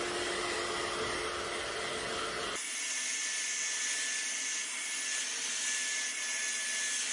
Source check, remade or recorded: recorded